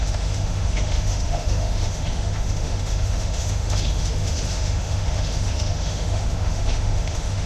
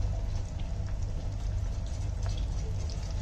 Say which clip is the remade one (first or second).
first